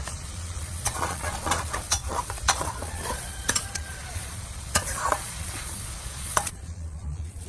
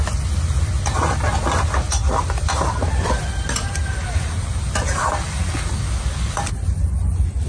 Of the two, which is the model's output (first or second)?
first